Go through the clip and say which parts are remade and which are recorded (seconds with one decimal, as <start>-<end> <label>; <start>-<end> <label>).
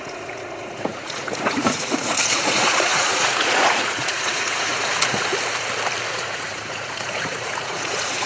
0.0-5.3 remade; 5.3-6.1 recorded; 6.1-8.3 remade